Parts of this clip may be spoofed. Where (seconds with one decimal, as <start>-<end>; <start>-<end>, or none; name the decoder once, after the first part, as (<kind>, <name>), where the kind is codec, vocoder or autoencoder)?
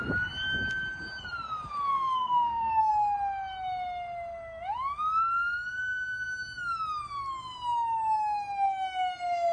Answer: 1.9-2.9 (codec, SNAC)